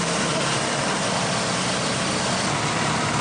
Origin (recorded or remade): remade